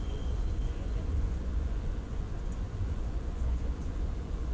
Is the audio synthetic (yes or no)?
yes